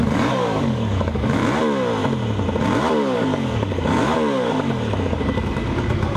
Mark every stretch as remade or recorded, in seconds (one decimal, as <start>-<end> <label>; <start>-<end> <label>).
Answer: 0.0-1.4 remade; 1.4-2.9 recorded; 2.9-6.2 remade